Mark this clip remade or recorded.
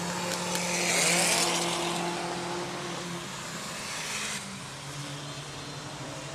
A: recorded